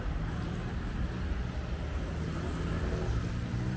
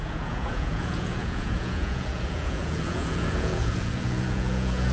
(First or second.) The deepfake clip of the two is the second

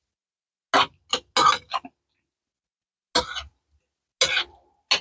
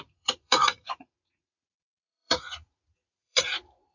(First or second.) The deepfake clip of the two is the second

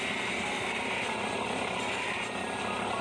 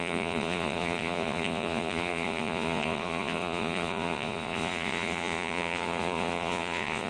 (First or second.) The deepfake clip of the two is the second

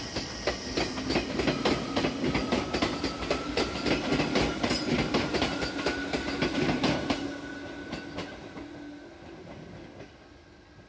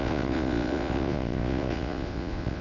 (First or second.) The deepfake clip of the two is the second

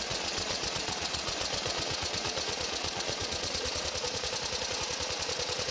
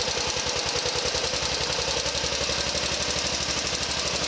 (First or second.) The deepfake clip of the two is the first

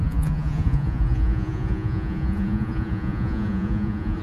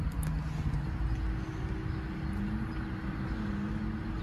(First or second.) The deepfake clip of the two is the first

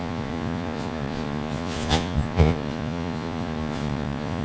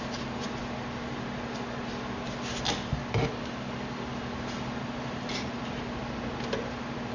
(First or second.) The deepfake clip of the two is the first